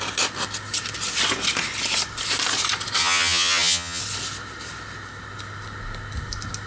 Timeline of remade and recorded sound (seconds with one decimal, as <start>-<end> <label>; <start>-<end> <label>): 0.0-3.0 recorded; 3.0-4.0 remade; 4.0-6.7 recorded